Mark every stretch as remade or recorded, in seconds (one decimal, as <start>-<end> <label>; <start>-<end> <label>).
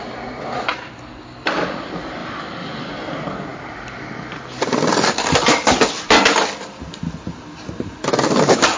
0.0-2.2 recorded; 2.2-2.9 remade; 2.9-3.5 recorded; 3.5-4.4 remade; 4.4-8.8 recorded